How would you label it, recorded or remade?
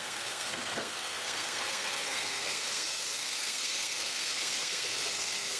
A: remade